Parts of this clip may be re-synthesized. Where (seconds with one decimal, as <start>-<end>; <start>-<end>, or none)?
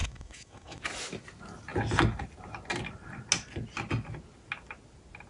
0.0-0.8